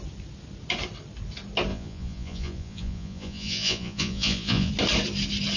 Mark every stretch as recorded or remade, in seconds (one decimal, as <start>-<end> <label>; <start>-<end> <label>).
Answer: 0.0-1.7 recorded; 1.7-4.7 remade; 4.7-5.6 recorded